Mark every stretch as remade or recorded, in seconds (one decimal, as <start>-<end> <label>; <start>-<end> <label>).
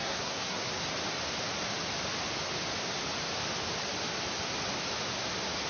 0.0-0.7 remade; 0.7-5.7 recorded